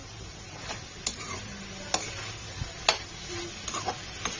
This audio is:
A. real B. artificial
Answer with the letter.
A